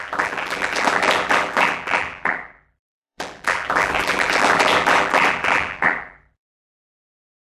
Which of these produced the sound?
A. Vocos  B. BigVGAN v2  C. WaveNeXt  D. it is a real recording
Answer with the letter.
B